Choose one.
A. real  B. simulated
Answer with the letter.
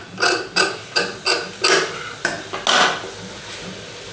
A